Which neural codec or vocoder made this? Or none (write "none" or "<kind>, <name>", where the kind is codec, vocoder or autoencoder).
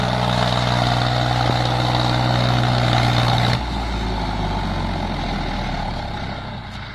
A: none